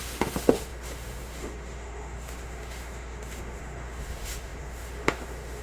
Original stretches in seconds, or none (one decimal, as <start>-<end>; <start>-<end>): none